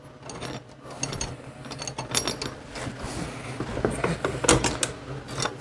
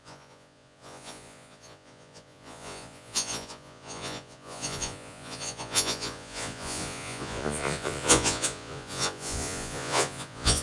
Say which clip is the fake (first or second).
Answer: second